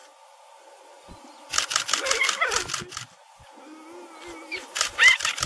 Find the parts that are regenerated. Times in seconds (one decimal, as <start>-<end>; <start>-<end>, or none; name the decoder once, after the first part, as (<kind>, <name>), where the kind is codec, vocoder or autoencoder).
4.5-5.1 (vocoder, BigVGAN v2)